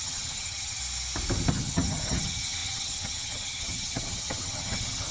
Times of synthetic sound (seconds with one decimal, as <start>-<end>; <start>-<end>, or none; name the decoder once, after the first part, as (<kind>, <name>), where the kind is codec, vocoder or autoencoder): 0.0-0.8 (vocoder, HiFi-GAN); 1.5-5.1